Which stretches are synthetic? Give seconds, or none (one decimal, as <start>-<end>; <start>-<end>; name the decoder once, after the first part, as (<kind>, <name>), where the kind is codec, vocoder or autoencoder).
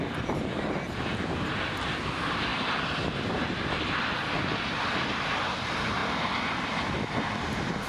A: 2.5-4.3 (vocoder, BigVGAN v2)